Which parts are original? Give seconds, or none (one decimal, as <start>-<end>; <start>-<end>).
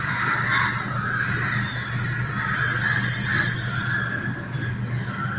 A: 0.0-5.4